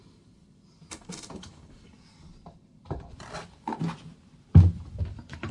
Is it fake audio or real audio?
fake